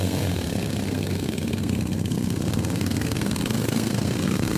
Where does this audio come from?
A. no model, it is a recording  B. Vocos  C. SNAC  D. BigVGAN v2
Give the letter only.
C